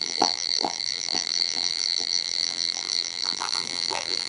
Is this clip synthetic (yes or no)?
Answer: yes